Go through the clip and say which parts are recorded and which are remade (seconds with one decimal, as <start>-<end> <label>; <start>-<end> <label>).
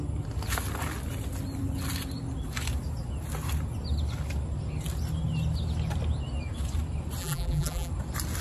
0.0-7.2 recorded; 7.2-7.9 remade; 7.9-8.4 recorded